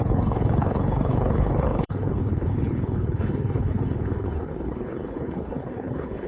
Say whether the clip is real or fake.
fake